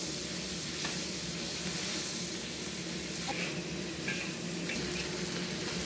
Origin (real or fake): real